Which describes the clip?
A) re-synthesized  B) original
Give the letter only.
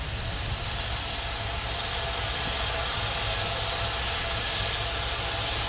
B